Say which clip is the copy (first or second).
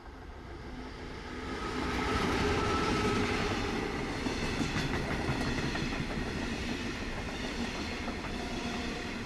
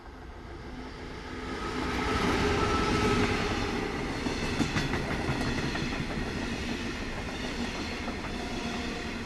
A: first